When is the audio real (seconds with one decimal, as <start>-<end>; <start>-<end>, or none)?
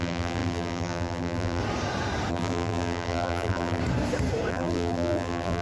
1.6-2.3; 3.8-4.5